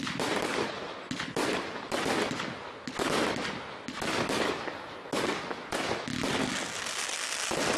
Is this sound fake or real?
real